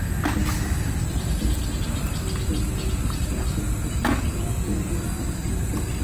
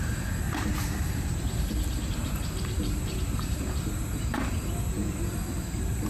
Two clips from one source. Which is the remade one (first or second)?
second